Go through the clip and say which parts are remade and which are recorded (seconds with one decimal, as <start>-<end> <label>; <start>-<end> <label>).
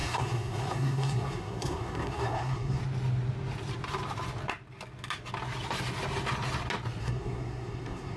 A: 0.0-2.8 remade; 2.8-7.0 recorded; 7.0-8.2 remade